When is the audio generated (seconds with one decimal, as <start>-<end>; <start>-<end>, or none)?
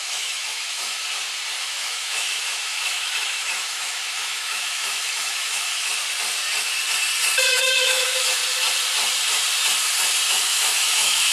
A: 0.0-1.0; 1.6-5.9; 7.5-8.4; 10.3-11.3